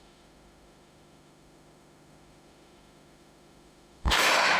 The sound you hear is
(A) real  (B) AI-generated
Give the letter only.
B